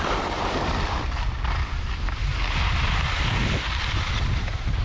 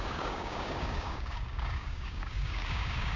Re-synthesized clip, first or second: second